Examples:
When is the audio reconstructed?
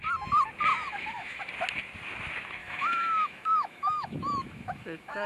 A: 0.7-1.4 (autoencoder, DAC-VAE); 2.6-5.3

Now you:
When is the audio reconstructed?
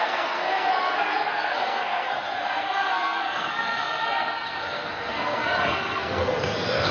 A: 0.0-6.9 (codec, SNAC)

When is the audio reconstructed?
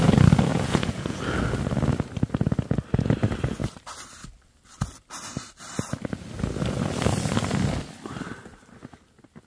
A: 0.5-1.2 (vocoder, Vocos)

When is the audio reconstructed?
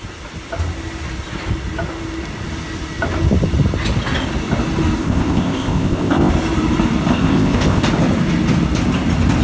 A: 5.0-6.3 (codec, ZipCodec); 7.1-7.8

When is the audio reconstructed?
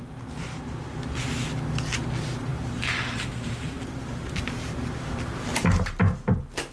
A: 2.5-5.1 (vocoder, BigVGAN v2); 5.5-6.0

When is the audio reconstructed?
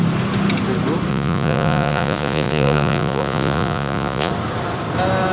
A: 1.1-4.3 (vocoder, Vocos)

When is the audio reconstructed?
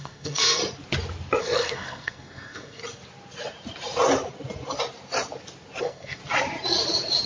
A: 0.0-0.6 (codec, SNAC); 1.4-2.8; 5.8-6.2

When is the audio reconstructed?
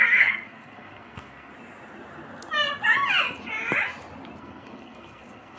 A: 0.0-1.5 (codec, SNAC); 4.4-5.6